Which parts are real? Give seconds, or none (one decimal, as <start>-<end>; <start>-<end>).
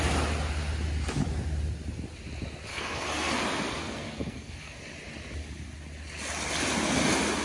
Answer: 0.0-2.7; 3.4-3.8; 4.8-7.4